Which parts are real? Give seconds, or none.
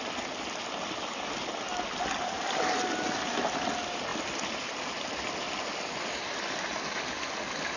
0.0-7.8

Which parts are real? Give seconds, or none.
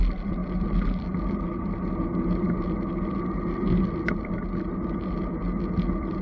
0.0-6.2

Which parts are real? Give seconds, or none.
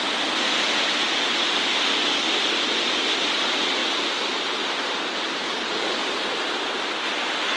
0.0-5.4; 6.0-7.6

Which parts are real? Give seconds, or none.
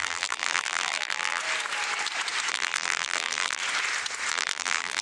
1.4-2.5; 3.6-4.3